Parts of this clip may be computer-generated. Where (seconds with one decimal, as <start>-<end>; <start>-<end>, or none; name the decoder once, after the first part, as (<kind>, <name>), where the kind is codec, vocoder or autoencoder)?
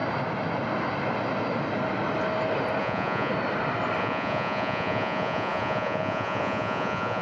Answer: 2.8-3.3 (vocoder, Vocos); 4.0-7.2